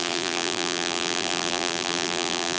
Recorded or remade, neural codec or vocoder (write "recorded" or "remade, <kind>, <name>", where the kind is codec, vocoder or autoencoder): remade, vocoder, BigVGAN v2